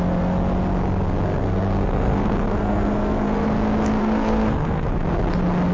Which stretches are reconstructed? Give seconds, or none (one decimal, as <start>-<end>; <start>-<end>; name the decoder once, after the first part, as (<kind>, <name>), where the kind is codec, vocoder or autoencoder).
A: 1.4-3.5 (codec, SNAC); 4.0-4.9